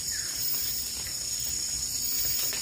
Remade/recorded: recorded